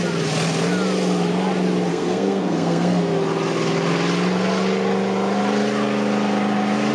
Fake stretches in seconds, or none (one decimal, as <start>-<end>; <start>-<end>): 1.9-3.1